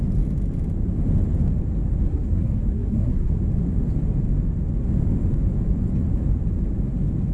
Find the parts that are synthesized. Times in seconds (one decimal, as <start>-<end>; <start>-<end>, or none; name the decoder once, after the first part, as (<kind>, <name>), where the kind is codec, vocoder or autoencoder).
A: 2.1-3.4 (codec, SNAC)